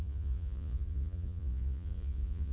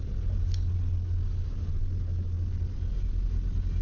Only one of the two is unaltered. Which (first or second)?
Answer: second